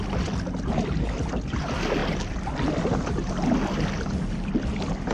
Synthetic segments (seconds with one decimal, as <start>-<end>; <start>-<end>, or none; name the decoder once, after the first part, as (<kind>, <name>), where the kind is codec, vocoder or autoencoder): none